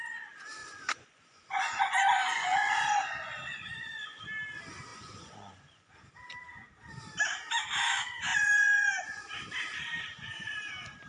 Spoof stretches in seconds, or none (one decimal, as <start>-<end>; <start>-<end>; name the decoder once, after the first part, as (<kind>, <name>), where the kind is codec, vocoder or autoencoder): 0.6-4.2 (vocoder, Vocos); 4.9-5.9; 8.3-9.2